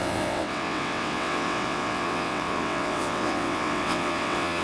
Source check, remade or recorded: remade